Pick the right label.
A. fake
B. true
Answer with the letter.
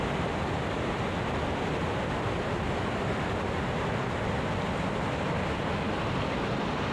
B